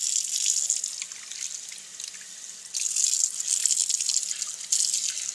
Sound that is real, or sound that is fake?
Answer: real